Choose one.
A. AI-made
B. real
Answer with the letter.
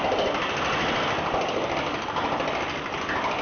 B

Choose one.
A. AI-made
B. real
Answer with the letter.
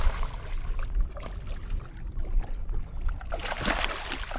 B